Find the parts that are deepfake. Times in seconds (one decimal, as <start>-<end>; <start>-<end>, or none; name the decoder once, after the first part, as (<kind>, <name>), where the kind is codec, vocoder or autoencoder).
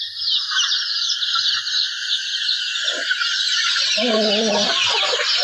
none